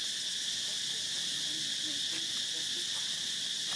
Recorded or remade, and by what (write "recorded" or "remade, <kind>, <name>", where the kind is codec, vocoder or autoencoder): recorded